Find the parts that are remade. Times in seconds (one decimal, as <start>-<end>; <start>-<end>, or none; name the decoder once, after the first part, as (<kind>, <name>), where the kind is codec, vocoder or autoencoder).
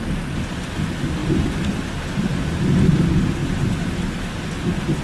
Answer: none